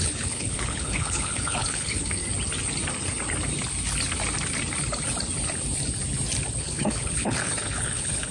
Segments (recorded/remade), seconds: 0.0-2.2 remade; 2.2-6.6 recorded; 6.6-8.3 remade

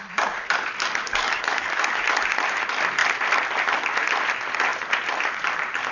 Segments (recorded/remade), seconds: 0.0-1.1 recorded; 1.1-2.0 remade; 2.0-5.9 recorded

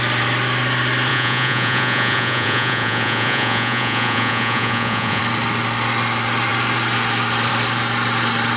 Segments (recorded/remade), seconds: 0.0-1.1 recorded; 1.1-5.2 remade; 5.2-8.6 recorded